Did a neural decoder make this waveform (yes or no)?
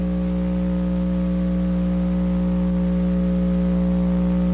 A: no